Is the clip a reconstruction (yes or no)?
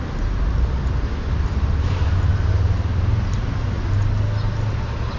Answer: no